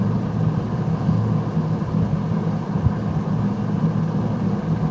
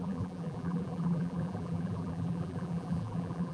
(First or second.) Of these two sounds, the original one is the first